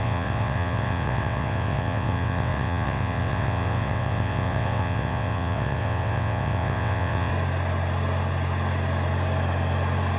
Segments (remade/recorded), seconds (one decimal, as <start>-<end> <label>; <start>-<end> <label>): 0.0-7.3 remade; 7.3-10.2 recorded